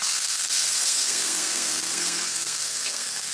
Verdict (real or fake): fake